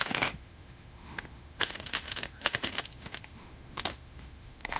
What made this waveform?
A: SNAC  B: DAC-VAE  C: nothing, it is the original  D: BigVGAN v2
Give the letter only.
B